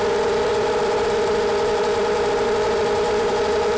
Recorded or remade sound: remade